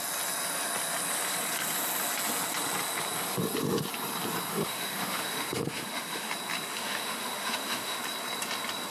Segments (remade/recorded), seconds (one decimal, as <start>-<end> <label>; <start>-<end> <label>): 0.0-4.5 recorded; 4.5-6.3 remade; 6.3-6.7 recorded; 6.7-8.0 remade; 8.0-8.9 recorded